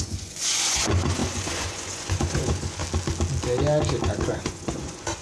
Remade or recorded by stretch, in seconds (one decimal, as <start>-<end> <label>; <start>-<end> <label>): 0.0-2.8 remade; 2.8-4.3 recorded; 4.3-5.2 remade